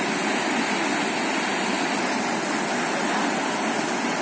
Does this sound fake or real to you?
real